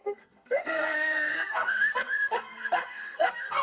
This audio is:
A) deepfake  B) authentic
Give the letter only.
A